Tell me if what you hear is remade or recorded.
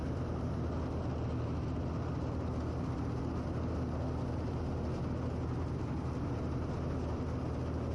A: recorded